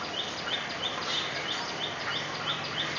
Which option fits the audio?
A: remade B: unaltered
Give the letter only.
B